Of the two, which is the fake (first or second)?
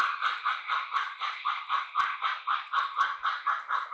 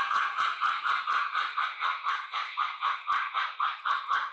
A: second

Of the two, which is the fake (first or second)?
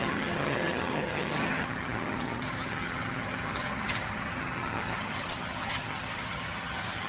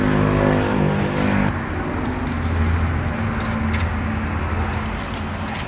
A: first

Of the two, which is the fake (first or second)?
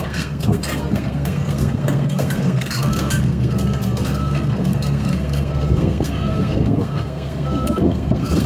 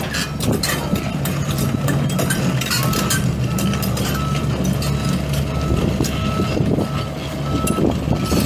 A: first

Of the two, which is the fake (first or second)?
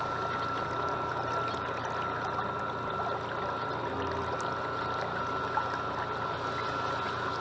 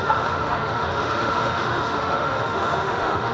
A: second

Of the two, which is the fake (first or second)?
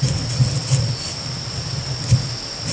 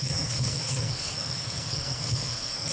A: second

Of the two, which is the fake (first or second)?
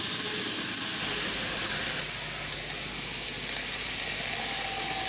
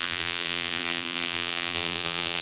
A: second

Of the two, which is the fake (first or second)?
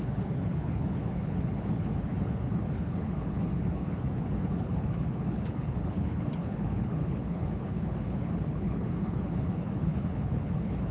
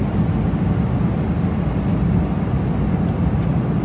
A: first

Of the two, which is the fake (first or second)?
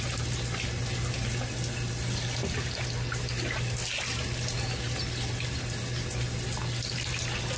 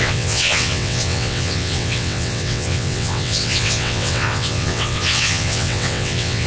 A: second